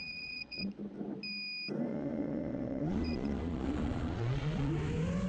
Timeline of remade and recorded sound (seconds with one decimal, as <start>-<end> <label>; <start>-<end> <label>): 0.0-0.7 remade; 0.7-1.9 recorded; 1.9-4.7 remade; 4.7-5.3 recorded